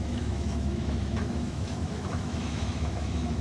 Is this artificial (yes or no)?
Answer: yes